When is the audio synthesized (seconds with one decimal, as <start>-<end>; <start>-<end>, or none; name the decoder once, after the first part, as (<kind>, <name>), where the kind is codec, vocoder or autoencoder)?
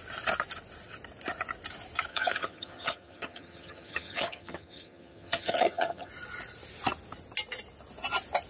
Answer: 2.1-6.1 (vocoder, HiFi-GAN)